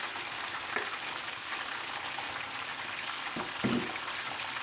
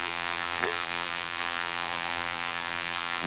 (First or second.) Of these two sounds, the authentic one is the first